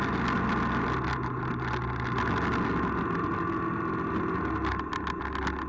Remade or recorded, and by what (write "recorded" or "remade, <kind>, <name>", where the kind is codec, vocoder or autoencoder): recorded